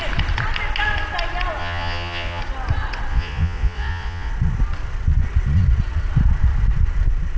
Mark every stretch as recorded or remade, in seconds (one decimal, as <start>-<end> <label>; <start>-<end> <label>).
0.0-1.6 recorded; 1.6-2.4 remade; 2.4-3.1 recorded; 3.1-4.3 remade; 4.3-7.4 recorded